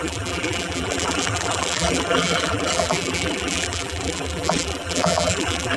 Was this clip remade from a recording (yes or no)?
yes